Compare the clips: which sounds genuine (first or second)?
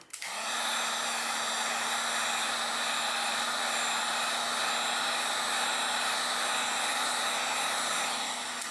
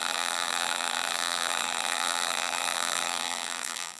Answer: first